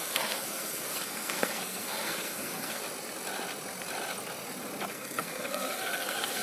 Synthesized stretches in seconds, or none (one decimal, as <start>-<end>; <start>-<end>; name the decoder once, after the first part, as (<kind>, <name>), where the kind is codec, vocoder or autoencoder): 0.0-2.8 (codec, SNAC); 4.9-6.4

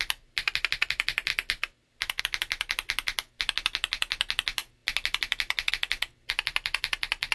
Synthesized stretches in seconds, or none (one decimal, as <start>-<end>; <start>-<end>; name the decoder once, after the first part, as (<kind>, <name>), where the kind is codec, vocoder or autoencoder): none